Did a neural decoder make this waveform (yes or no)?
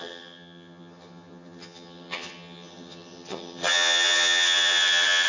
yes